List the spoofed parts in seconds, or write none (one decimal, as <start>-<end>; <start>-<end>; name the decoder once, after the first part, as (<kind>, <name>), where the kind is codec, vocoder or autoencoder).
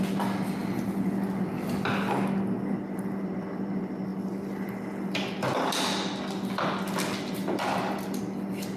none